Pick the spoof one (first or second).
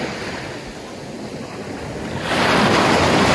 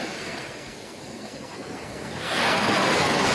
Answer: second